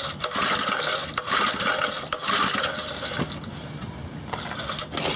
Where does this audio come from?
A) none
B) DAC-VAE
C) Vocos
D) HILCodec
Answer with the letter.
A